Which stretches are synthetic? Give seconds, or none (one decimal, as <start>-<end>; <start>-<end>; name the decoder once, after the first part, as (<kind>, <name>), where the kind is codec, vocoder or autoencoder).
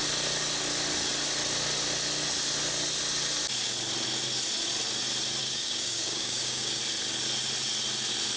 5.4-6.8 (codec, DAC)